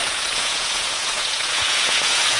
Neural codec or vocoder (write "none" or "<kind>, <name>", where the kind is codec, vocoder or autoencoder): vocoder, Vocos